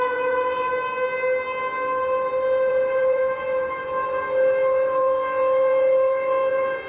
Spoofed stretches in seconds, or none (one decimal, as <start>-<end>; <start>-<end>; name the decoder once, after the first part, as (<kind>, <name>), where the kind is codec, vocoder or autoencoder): 0.0-0.7 (vocoder, Vocos); 2.7-6.9